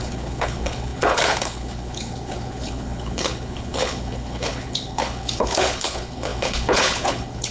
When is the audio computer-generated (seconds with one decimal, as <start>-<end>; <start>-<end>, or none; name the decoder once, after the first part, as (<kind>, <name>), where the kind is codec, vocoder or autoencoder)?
0.0-7.5 (codec, HILCodec)